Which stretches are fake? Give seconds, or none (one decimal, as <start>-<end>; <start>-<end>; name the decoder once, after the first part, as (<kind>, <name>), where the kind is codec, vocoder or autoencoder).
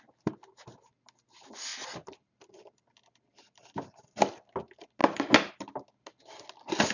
none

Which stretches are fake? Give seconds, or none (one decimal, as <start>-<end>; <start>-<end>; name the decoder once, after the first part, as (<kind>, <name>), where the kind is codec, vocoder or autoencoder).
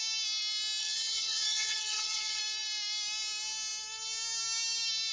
0.8-2.4 (vocoder, HiFi-GAN)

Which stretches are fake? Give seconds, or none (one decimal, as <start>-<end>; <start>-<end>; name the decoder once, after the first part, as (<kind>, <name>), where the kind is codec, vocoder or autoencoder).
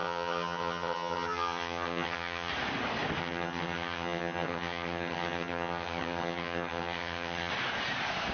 0.0-2.5 (vocoder, HiFi-GAN); 3.2-7.5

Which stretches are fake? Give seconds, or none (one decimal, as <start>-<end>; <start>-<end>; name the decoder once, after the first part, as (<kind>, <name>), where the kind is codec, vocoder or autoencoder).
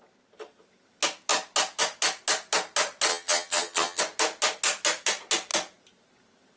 3.1-4.0 (vocoder, HiFi-GAN)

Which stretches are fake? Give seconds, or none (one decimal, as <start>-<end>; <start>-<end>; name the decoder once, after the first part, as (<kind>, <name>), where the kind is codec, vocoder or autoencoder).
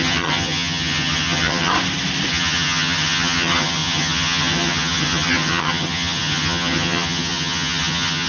0.0-1.7 (vocoder, HiFi-GAN); 2.3-8.3